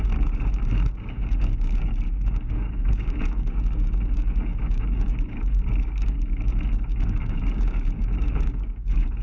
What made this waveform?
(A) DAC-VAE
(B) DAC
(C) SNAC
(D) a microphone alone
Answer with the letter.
B